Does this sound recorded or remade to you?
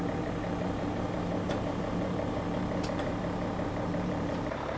remade